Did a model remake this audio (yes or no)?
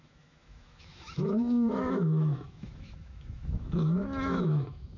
yes